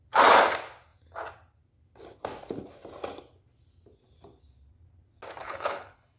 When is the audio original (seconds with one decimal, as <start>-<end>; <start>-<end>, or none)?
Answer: 0.0-5.4